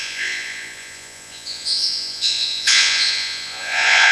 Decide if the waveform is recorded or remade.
remade